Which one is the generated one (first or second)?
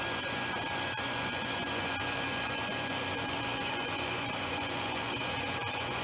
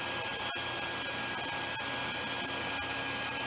first